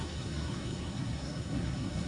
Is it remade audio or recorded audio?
remade